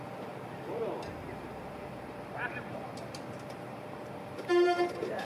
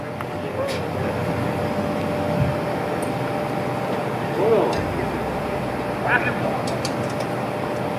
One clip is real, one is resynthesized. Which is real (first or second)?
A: second